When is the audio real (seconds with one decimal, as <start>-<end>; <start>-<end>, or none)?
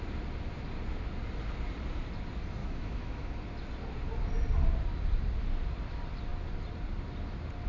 0.0-2.6; 3.3-7.7